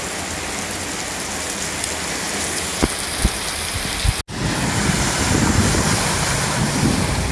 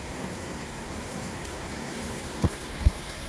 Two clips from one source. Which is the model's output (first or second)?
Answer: second